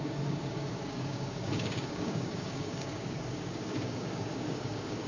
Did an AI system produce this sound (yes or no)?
yes